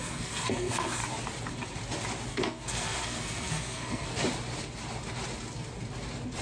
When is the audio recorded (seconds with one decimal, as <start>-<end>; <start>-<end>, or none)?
1.0-2.3; 4.1-6.4